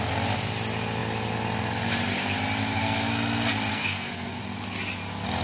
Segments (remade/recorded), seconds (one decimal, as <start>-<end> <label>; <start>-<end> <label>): 0.0-2.6 recorded; 2.6-3.1 remade; 3.1-3.7 recorded; 3.7-4.4 remade; 4.4-5.4 recorded